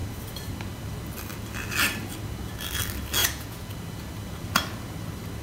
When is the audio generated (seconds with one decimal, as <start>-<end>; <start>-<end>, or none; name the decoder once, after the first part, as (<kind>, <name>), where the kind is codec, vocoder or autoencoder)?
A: 3.2-3.7 (vocoder, Vocos)